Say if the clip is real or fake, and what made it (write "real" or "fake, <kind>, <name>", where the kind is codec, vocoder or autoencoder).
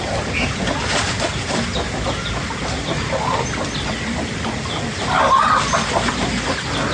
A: real